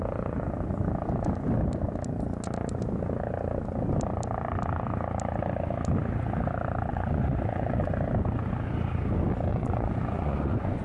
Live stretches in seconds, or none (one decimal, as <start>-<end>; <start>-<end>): 0.0-6.9; 7.9-9.5

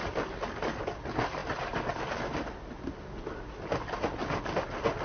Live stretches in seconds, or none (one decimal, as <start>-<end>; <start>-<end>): 0.0-5.0